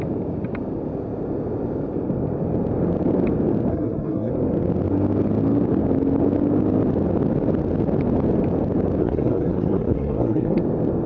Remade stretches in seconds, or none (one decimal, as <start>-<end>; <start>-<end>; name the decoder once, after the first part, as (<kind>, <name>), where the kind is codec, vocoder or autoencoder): 3.7-4.3 (codec, SNAC); 9.0-10.6